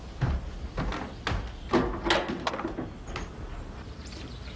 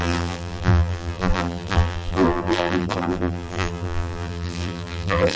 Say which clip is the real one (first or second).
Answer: first